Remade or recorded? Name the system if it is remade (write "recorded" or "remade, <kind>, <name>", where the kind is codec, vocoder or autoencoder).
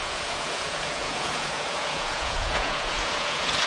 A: remade, vocoder, Vocos